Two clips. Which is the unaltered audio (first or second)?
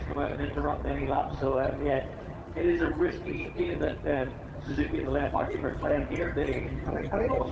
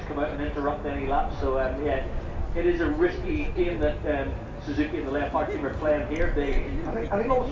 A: second